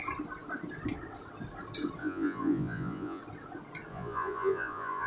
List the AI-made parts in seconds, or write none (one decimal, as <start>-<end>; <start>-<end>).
2.0-3.2; 3.9-5.1